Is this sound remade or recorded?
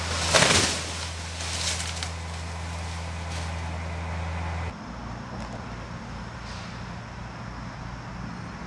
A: recorded